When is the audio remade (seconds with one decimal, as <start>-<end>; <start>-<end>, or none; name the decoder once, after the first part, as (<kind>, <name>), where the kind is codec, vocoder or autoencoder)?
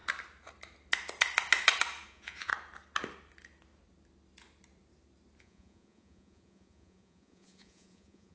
2.1-2.5 (vocoder, Vocos); 5.4-8.3